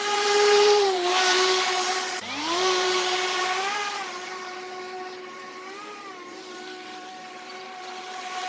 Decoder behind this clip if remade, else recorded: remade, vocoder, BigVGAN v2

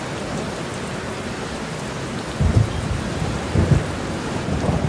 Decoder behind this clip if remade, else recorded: recorded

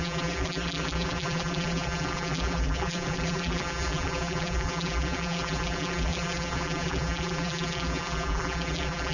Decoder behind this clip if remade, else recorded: remade, vocoder, BigVGAN v2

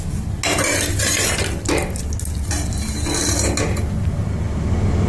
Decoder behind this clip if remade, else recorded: recorded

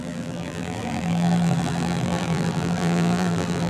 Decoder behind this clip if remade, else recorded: remade, vocoder, BigVGAN v2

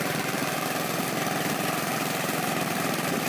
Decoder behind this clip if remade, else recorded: remade, vocoder, BigVGAN v2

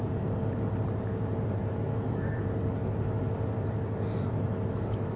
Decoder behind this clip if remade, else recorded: recorded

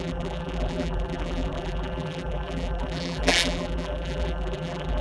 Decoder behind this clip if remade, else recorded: remade, vocoder, BigVGAN v2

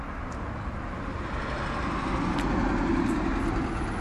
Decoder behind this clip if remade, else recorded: recorded